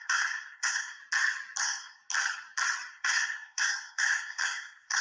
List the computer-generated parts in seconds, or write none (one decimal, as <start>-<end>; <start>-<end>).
0.0-1.0; 1.6-2.0; 2.9-5.0